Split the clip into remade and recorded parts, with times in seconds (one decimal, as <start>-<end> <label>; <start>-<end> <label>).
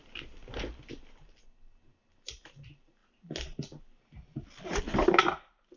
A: 0.0-5.8 recorded